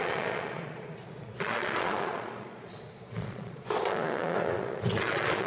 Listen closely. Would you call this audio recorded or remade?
remade